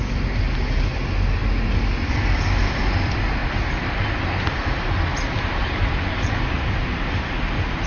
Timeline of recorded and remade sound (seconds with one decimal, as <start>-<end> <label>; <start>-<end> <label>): 0.0-3.4 recorded; 3.4-6.0 remade; 6.0-7.9 recorded